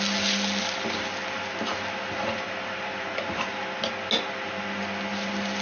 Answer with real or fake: real